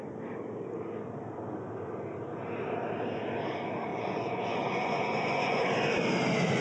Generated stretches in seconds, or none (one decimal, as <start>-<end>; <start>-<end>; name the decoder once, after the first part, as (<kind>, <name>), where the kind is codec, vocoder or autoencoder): 3.9-5.6 (vocoder, Vocos)